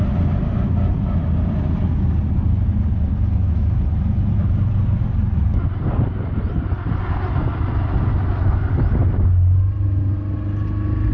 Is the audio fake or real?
real